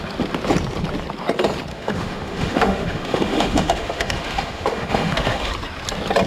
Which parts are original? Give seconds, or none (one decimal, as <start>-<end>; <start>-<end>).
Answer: 0.0-1.7; 5.5-6.3